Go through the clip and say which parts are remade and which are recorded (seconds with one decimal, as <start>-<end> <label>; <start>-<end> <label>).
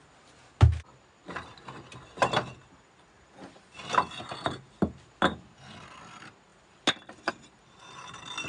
0.0-8.5 recorded